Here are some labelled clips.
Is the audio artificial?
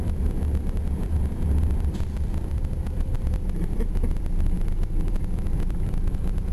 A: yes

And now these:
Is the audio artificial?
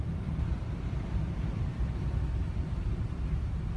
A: yes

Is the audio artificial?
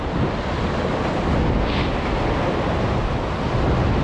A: no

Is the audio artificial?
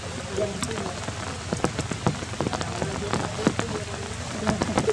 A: no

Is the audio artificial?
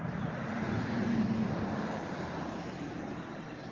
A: yes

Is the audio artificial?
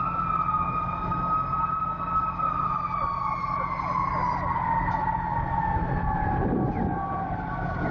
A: no